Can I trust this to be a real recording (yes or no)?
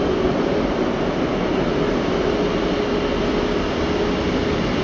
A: yes